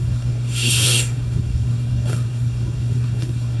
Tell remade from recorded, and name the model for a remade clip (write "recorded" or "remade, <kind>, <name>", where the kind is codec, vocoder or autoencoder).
remade, codec, SNAC